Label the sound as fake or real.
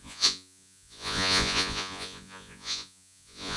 fake